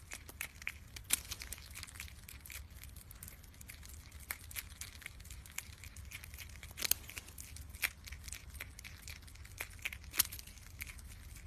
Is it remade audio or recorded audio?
recorded